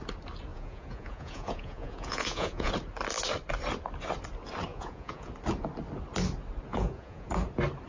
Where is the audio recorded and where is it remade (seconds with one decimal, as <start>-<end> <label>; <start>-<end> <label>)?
0.0-0.5 recorded; 0.5-2.7 remade; 2.7-4.7 recorded; 4.7-5.3 remade; 5.3-6.7 recorded; 6.7-7.3 remade; 7.3-7.9 recorded

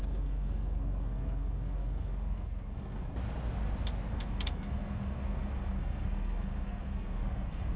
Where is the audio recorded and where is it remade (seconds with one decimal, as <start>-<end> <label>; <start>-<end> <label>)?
0.0-3.1 remade; 3.1-4.1 recorded; 4.1-7.8 remade

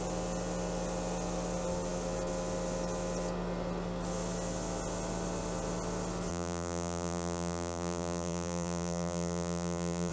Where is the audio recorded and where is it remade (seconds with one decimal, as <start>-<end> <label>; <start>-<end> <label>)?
0.0-6.3 recorded; 6.3-10.1 remade